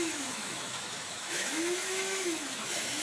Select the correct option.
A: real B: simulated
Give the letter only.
B